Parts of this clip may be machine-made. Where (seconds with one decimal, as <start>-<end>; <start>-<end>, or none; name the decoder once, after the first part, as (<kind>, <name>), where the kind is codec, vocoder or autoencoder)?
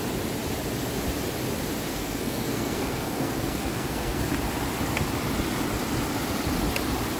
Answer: 1.9-4.3 (codec, SNAC)